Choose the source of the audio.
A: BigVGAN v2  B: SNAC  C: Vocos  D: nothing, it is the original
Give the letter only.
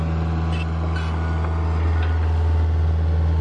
D